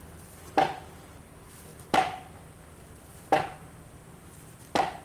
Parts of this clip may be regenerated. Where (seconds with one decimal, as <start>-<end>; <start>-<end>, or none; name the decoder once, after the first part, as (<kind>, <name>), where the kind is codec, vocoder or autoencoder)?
none